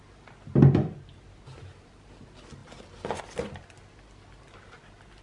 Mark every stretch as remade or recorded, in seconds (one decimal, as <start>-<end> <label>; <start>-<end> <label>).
0.0-5.2 recorded